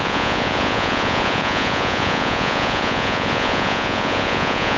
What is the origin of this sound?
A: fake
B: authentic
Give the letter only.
A